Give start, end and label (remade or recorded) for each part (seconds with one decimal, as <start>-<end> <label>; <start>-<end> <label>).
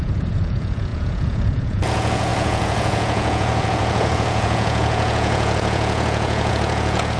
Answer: 0.0-7.2 remade